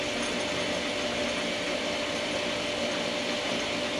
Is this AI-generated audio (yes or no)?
no